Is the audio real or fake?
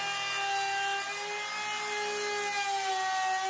real